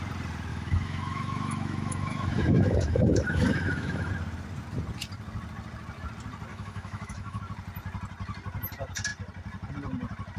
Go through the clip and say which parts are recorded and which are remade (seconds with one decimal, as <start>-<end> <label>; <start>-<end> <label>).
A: 0.0-0.5 recorded; 0.5-4.1 remade; 4.1-6.5 recorded; 6.5-7.4 remade; 7.4-10.4 recorded